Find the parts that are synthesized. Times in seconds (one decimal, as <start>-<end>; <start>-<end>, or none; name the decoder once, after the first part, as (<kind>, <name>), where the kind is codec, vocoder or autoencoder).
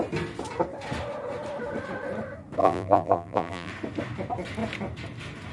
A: 2.6-3.7 (vocoder, BigVGAN v2)